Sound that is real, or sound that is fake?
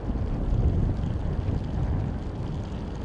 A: real